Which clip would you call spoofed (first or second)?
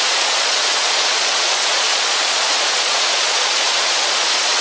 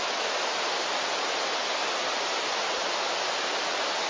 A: first